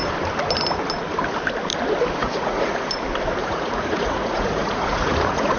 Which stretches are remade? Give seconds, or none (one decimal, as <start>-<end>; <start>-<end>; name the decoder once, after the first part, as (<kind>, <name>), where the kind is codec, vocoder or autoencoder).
2.2-2.9 (vocoder, Vocos); 3.4-5.6